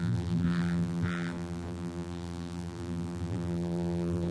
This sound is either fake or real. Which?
fake